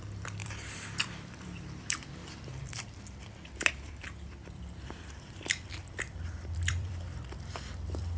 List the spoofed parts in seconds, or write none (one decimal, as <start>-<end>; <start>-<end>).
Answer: 0.0-8.2